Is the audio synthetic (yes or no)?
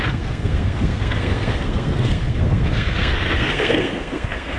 yes